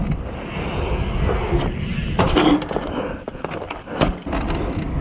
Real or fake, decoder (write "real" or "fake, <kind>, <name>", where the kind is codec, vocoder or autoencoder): real